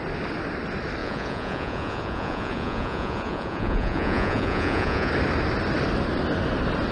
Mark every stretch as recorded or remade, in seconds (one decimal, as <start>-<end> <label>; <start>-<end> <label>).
0.0-1.0 recorded; 1.0-5.1 remade; 5.1-6.9 recorded

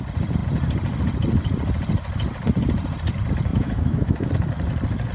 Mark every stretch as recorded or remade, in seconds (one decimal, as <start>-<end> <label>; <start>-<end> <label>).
0.0-3.5 recorded; 3.5-4.3 remade; 4.3-5.1 recorded

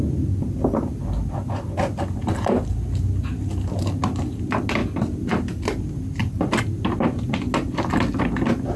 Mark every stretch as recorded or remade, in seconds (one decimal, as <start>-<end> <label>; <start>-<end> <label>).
0.0-8.8 recorded

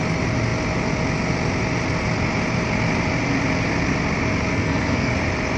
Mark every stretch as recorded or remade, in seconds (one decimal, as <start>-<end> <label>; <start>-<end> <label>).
0.0-4.5 recorded; 4.5-5.1 remade; 5.1-5.6 recorded

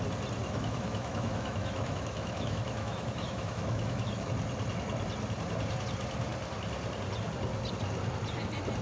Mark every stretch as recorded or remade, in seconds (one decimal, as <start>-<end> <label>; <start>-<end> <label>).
0.0-0.4 recorded; 0.4-4.3 remade; 4.3-8.8 recorded

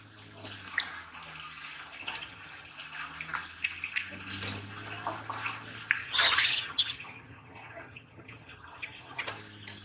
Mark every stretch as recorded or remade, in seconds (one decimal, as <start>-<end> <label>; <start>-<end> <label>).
0.0-2.0 recorded; 2.0-2.7 remade; 2.7-6.0 recorded; 6.0-9.3 remade; 9.3-9.8 recorded